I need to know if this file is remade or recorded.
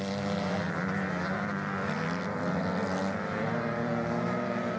recorded